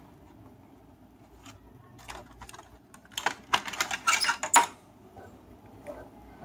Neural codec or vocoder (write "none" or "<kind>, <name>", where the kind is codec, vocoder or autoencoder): none